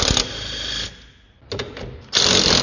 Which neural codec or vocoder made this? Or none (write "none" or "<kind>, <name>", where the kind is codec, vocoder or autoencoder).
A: none